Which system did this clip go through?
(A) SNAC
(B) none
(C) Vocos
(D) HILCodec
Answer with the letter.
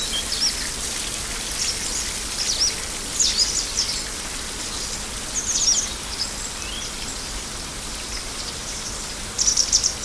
B